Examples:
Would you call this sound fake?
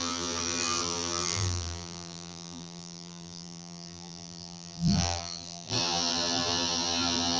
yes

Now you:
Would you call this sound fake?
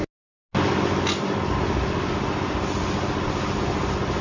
no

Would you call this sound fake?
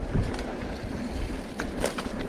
yes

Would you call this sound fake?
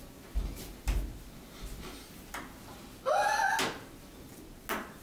no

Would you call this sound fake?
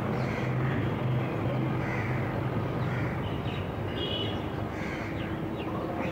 no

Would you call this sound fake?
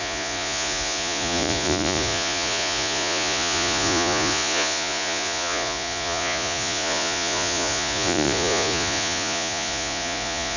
yes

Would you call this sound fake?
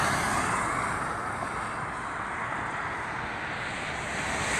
no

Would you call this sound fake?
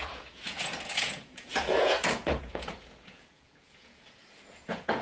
yes